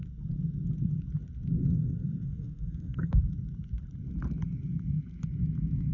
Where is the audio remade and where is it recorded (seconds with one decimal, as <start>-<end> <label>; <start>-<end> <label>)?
0.0-1.6 recorded; 1.6-3.2 remade; 3.2-5.9 recorded